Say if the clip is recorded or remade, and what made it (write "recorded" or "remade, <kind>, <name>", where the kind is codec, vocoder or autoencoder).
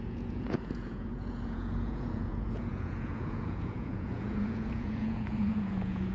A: remade, vocoder, Vocos